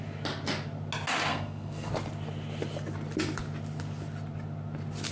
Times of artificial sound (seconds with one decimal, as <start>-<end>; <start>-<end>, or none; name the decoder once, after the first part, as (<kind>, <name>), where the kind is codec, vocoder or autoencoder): 1.3-1.9 (codec, SNAC)